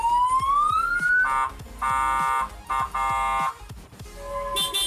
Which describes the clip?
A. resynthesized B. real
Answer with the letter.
B